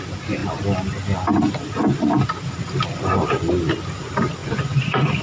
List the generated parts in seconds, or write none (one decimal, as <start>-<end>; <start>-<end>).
4.4-5.2